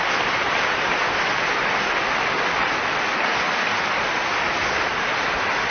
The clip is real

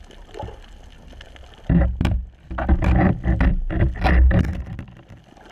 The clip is real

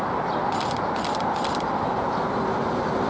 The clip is real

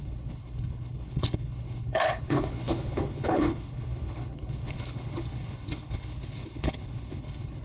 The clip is fake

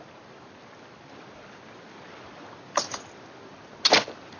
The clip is real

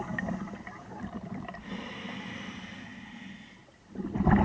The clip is real